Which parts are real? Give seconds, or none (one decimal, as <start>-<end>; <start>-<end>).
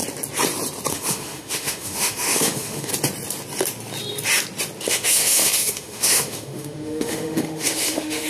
0.0-0.9; 2.9-4.9